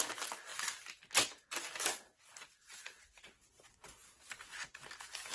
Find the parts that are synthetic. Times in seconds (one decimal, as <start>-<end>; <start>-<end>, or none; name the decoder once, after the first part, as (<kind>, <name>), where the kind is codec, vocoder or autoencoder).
none